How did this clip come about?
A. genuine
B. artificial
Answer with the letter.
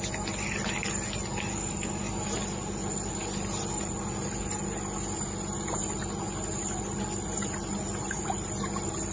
A